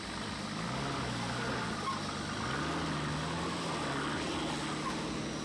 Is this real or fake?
real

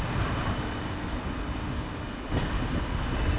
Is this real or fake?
real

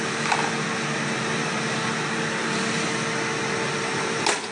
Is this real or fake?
real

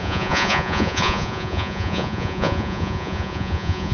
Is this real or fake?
fake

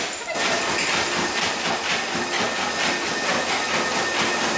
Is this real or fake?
real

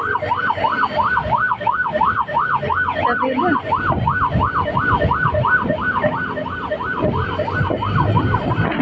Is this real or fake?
real